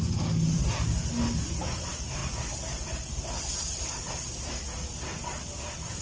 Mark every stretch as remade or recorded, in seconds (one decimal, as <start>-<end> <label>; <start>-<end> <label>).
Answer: 0.0-6.0 recorded